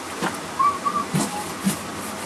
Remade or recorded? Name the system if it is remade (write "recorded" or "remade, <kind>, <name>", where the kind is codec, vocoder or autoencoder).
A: recorded